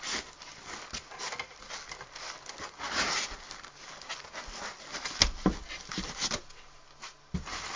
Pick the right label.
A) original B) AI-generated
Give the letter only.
A